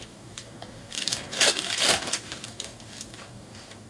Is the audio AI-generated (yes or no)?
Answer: yes